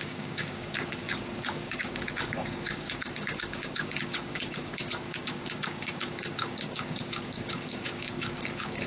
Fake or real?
fake